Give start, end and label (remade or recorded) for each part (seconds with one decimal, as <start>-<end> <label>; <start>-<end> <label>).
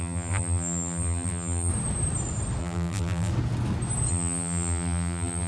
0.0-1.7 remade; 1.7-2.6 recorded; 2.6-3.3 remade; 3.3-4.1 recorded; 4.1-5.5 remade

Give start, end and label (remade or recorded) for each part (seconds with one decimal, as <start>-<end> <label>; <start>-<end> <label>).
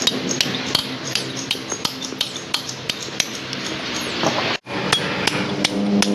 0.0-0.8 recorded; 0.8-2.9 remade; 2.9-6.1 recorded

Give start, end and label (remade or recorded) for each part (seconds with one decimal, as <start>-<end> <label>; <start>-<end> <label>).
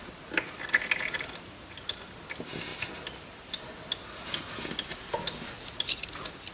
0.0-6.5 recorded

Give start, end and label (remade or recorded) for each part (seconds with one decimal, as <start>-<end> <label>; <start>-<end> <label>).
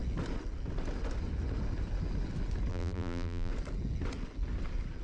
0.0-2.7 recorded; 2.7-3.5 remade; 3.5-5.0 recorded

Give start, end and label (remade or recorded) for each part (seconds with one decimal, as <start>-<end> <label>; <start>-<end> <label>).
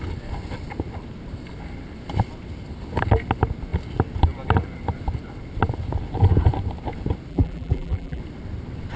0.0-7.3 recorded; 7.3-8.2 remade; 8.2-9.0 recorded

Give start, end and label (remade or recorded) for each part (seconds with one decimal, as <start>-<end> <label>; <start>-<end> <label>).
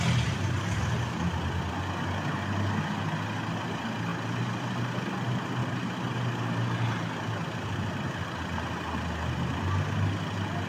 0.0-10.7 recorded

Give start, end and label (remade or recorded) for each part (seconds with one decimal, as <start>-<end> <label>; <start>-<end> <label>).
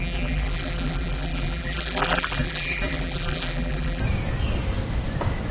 0.0-4.0 remade; 4.0-5.5 recorded